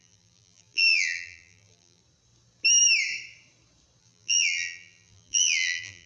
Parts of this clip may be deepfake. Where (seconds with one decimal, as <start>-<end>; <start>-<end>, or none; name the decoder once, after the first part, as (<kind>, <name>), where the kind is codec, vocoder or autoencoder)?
0.0-2.0 (vocoder, BigVGAN v2); 4.0-6.1